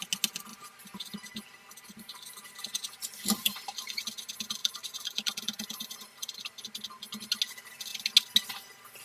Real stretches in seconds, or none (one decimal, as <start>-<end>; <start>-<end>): 0.0-0.5; 4.0-4.6; 6.4-9.0